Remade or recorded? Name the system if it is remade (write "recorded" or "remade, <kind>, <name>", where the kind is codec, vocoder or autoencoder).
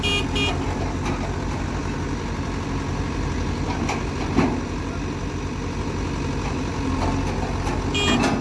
recorded